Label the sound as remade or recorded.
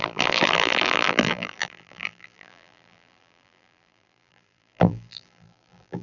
remade